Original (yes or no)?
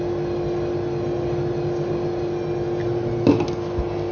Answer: yes